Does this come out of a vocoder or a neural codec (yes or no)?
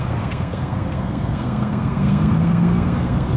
yes